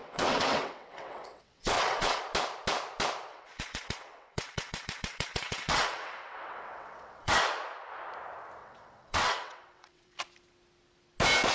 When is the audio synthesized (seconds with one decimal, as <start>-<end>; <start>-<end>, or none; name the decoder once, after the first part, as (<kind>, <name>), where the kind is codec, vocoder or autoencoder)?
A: 0.0-2.2 (vocoder, WaveNeXt); 3.3-7.3; 8.6-10.2